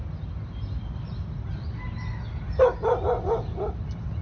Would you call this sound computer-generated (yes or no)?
no